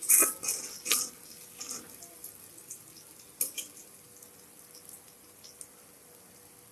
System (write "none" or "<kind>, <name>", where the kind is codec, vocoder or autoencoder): none